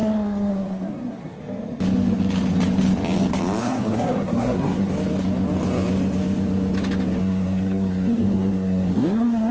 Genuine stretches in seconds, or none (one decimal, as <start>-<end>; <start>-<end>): 1.4-3.6; 4.9-7.2